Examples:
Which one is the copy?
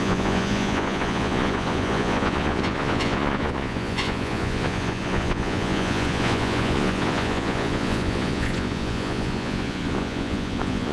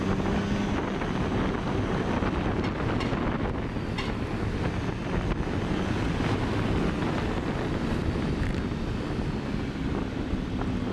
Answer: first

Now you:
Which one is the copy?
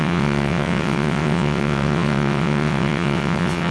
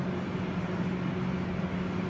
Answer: first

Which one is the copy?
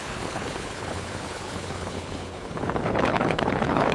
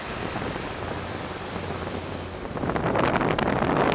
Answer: first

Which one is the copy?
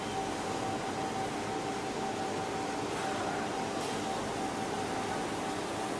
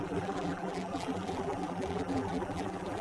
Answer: second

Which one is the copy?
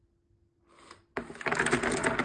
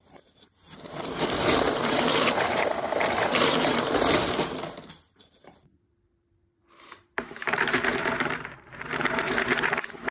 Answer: second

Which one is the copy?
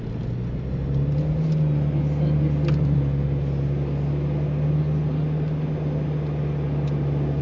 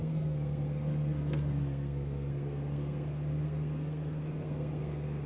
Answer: second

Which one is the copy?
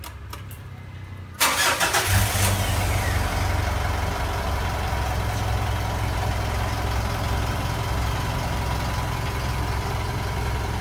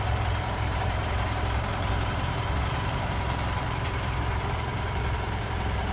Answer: second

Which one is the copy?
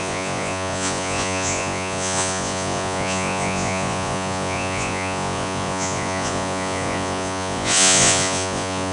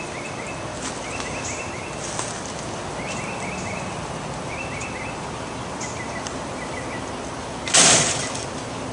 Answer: first